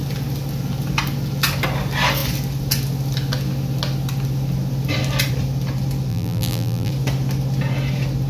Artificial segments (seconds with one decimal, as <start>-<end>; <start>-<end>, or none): 6.1-6.9